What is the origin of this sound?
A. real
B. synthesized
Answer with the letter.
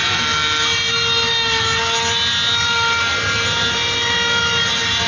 A